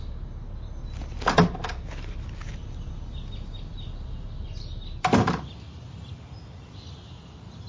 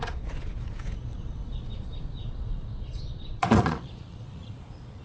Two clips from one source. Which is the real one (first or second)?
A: first